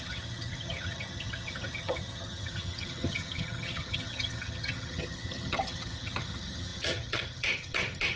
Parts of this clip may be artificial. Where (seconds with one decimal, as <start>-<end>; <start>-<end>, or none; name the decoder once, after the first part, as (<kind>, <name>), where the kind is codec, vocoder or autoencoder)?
0.0-8.2 (vocoder, HiFi-GAN)